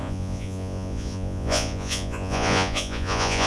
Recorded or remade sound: remade